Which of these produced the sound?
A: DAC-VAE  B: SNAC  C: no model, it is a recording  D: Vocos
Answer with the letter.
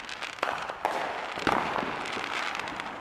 C